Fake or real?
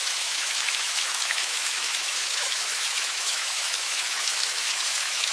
fake